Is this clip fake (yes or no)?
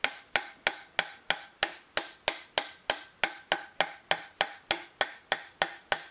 no